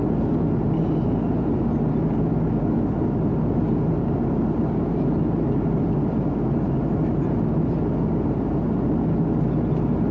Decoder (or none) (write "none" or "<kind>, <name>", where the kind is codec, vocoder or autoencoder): none